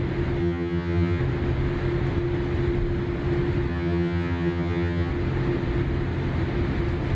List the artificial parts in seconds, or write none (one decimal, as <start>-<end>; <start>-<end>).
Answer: 0.4-1.2; 3.7-5.1